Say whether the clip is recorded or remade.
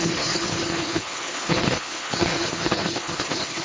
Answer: remade